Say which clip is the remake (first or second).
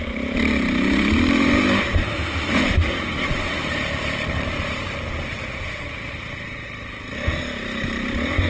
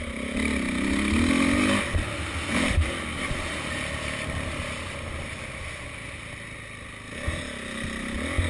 first